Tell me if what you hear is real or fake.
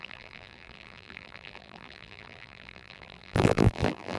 fake